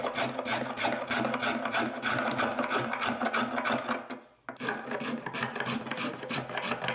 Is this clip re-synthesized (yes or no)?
no